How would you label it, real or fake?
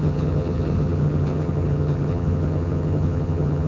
fake